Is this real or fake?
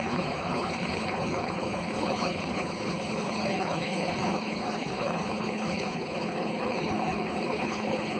fake